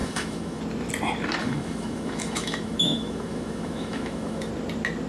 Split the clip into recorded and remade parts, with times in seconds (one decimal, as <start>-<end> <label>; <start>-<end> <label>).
0.0-0.6 remade; 0.6-1.4 recorded; 1.4-4.5 remade; 4.5-5.1 recorded